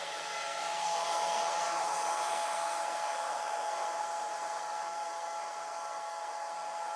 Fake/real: fake